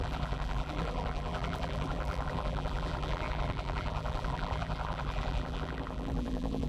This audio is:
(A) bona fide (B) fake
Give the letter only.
B